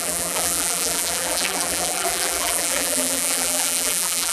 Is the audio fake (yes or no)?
yes